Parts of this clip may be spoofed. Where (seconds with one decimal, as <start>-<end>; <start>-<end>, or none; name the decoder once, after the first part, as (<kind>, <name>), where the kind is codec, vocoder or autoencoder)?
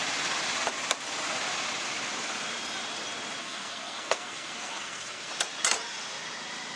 3.4-5.3 (codec, SNAC)